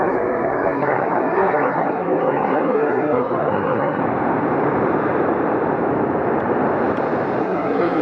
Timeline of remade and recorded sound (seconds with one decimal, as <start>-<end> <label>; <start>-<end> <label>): 0.0-4.0 remade; 4.0-7.4 recorded; 7.4-8.0 remade